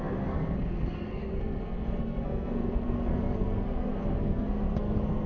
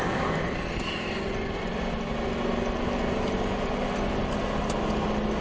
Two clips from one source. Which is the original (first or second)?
second